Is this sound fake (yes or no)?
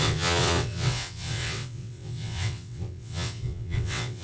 yes